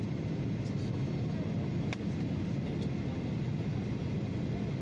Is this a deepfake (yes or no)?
no